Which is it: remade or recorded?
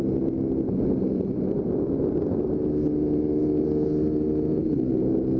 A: recorded